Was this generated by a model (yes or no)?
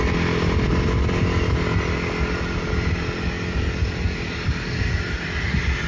no